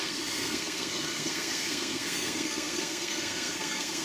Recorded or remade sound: remade